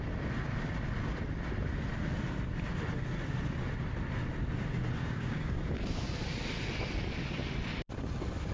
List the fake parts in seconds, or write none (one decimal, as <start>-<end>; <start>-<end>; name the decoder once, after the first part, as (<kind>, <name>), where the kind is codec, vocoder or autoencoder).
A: 5.0-5.6 (codec, DAC)